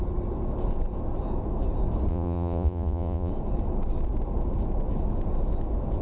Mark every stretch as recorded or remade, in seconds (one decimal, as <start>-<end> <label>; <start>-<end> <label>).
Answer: 0.0-2.1 recorded; 2.1-3.3 remade; 3.3-6.0 recorded